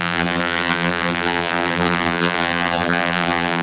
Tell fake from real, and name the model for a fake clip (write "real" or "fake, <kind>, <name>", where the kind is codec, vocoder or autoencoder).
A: fake, vocoder, BigVGAN v2